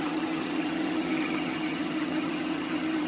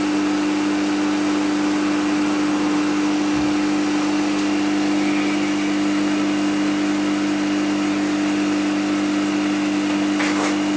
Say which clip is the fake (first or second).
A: first